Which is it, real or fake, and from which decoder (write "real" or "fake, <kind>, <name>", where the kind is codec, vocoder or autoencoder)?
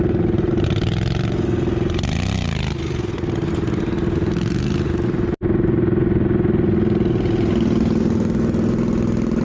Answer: real